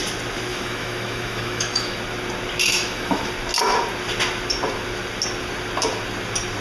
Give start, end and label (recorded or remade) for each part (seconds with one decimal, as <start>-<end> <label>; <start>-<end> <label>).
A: 0.0-0.5 recorded; 0.5-2.0 remade; 2.0-2.6 recorded; 2.6-3.3 remade; 3.3-6.6 recorded